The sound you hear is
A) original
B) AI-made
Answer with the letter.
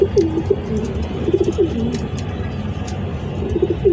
A